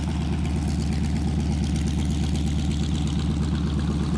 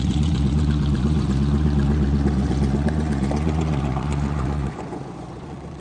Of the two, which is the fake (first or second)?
second